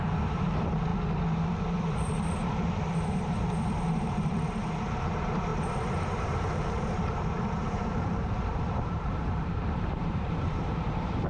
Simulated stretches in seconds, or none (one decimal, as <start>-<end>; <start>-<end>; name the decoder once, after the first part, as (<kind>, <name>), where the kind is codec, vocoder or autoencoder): 0.0-0.9 (vocoder, BigVGAN v2); 2.0-11.3